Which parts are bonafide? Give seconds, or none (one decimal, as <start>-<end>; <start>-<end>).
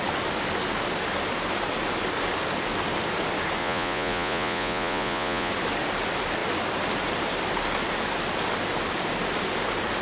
0.0-3.6; 5.5-10.0